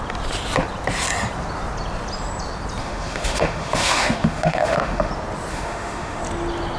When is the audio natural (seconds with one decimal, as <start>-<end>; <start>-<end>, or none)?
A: 0.0-2.8; 5.1-5.5; 6.2-6.8